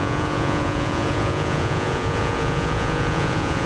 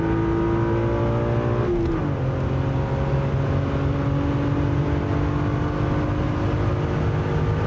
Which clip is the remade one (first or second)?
first